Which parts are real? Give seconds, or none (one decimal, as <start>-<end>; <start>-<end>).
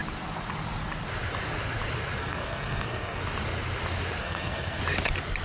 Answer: 0.0-2.2; 3.2-4.2; 4.8-5.4